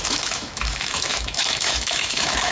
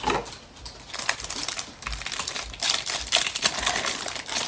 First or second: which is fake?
first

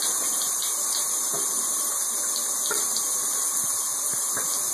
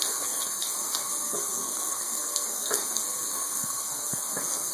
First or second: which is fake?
second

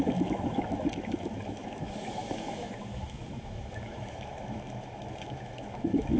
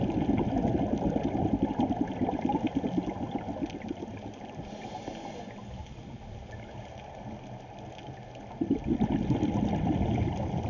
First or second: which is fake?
first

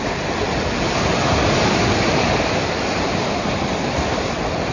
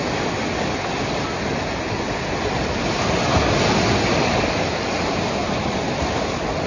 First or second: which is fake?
first